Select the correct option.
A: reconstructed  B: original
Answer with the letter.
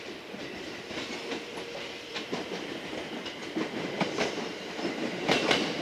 B